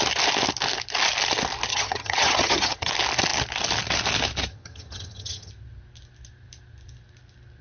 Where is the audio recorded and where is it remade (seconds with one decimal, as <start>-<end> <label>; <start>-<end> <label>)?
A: 0.0-1.7 recorded; 1.7-2.9 remade; 2.9-4.5 recorded; 4.5-5.5 remade; 5.5-7.6 recorded

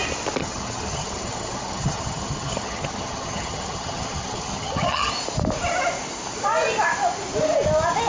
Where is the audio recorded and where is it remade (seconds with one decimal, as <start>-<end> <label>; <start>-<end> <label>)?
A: 0.0-0.4 recorded; 0.4-5.1 remade; 5.1-8.1 recorded

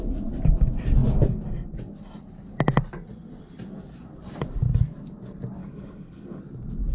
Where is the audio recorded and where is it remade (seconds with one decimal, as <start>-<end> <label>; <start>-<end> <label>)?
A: 0.0-5.6 recorded; 5.6-6.4 remade; 6.4-6.9 recorded

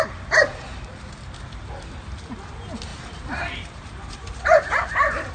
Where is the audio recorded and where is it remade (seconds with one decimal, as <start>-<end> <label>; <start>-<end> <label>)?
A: 0.0-2.9 recorded; 2.9-5.3 remade

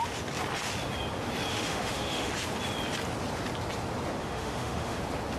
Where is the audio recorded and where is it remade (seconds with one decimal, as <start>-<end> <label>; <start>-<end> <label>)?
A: 0.0-1.5 recorded; 1.5-2.3 remade; 2.3-4.2 recorded; 4.2-5.0 remade; 5.0-5.4 recorded

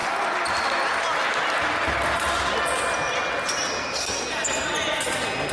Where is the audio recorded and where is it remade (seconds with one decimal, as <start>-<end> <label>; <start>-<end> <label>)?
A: 0.0-3.8 recorded; 3.8-4.3 remade; 4.3-5.5 recorded